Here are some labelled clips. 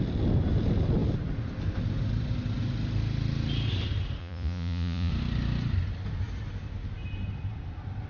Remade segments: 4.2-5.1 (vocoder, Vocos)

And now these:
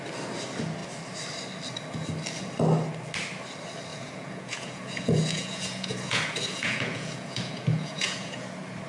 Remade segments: 3.9-8.4 (vocoder, Vocos)

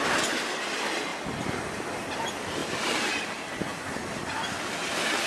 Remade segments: none

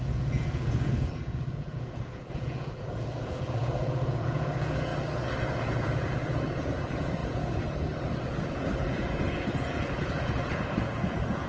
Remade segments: 0.0-4.9 (vocoder, Vocos); 5.4-11.5